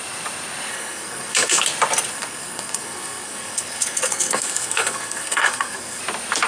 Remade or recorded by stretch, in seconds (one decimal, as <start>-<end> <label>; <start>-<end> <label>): 0.0-0.7 recorded; 0.7-1.6 remade; 1.6-2.1 recorded; 2.1-6.0 remade; 6.0-6.5 recorded